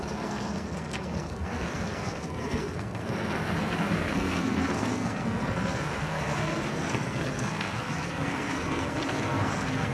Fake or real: fake